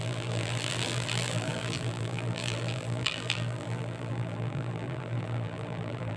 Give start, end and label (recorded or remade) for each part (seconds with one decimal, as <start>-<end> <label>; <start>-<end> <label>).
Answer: 0.0-6.2 remade